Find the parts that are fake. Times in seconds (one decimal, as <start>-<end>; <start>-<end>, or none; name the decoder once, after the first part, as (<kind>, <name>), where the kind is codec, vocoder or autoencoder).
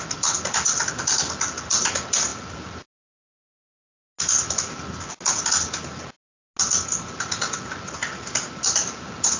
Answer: none